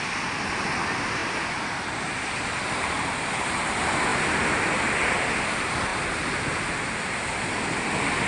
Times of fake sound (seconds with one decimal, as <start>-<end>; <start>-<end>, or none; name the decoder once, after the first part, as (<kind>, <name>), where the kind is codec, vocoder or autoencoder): none